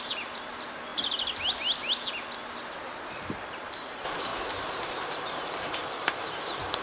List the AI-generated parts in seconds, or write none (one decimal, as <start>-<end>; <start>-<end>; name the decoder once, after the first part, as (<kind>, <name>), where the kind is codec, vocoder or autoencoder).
0.0-0.9 (vocoder, BigVGAN v2); 3.3-4.3; 5.0-6.8